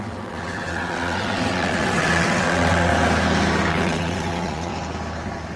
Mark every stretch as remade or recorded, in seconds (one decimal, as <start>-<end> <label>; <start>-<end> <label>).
0.0-2.9 remade; 2.9-3.7 recorded; 3.7-4.7 remade; 4.7-5.6 recorded